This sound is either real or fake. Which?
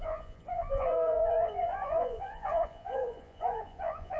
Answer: fake